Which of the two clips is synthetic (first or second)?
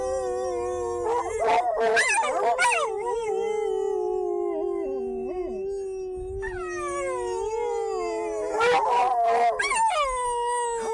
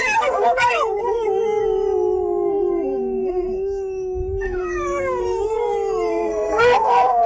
second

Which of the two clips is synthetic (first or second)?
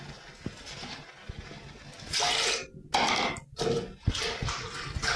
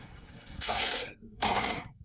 second